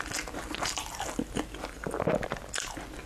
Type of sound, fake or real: real